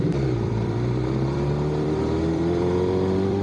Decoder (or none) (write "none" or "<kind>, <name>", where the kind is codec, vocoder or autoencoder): vocoder, BigVGAN v2